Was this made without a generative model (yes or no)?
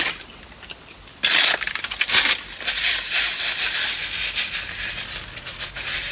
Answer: yes